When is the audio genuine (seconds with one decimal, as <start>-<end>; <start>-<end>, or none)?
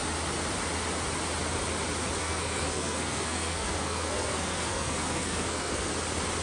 0.0-2.2; 5.9-6.4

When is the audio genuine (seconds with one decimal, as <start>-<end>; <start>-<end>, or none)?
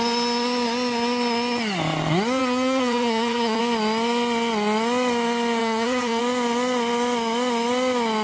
0.0-2.4; 3.6-5.6; 6.2-8.2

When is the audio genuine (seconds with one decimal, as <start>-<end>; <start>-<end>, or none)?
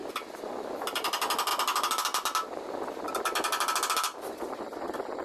0.0-5.2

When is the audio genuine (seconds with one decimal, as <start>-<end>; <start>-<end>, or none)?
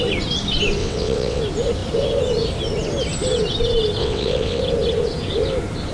0.0-0.8; 1.4-4.0; 4.6-5.9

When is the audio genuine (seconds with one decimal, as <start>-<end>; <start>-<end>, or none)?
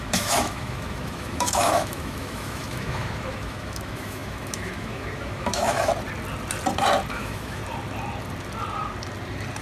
5.9-7.1; 7.6-9.6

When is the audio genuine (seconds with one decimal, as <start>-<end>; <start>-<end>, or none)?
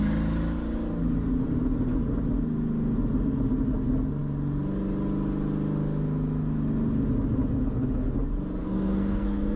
0.0-8.6